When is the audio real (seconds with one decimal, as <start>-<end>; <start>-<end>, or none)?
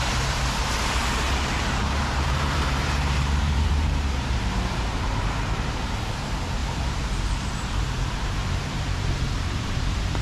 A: 6.6-7.5